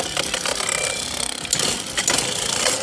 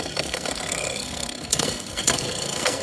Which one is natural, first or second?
first